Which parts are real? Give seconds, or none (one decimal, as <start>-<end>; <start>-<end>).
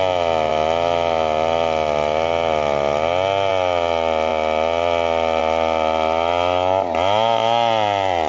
0.0-8.3